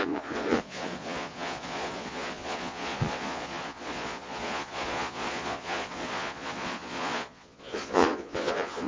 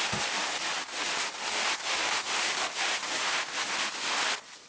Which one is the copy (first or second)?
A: first